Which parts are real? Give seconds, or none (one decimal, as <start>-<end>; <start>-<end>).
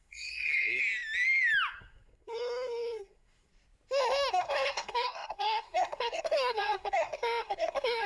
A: 0.8-1.7; 3.5-4.3